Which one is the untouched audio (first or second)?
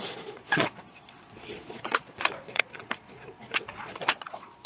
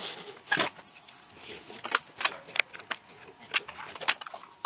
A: second